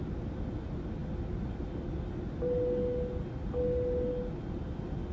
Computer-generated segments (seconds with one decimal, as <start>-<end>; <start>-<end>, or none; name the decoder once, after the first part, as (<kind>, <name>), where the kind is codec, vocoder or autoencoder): none